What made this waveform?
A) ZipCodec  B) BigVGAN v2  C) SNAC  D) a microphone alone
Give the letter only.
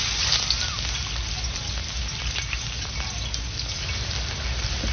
D